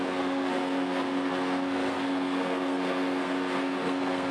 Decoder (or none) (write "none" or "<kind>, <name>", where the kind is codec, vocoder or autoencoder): codec, SNAC